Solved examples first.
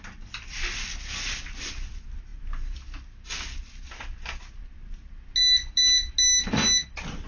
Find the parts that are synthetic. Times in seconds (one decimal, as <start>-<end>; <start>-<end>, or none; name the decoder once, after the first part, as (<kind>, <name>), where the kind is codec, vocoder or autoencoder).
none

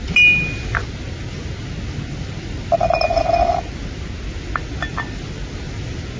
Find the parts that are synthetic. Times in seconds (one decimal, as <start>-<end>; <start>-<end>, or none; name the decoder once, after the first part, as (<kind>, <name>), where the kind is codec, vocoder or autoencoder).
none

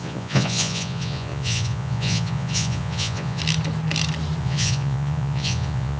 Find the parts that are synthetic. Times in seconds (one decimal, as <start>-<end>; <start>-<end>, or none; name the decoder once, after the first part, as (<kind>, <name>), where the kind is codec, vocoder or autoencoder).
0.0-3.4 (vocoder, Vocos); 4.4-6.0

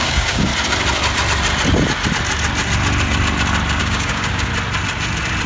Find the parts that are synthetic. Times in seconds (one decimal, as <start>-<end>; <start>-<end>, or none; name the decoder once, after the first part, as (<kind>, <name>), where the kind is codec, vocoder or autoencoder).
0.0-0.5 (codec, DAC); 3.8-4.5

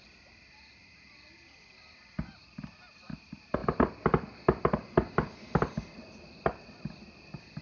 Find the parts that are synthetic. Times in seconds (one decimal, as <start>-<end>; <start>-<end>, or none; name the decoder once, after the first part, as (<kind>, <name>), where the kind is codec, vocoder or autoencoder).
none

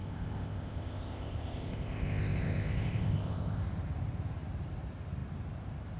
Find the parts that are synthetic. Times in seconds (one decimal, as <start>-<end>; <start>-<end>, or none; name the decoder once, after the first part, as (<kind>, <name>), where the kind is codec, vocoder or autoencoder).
0.0-3.6 (codec, ZipCodec)

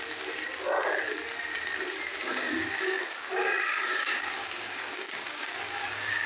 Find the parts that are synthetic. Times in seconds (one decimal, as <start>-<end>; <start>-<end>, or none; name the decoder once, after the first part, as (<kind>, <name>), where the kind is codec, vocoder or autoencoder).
2.1-6.3 (codec, DAC)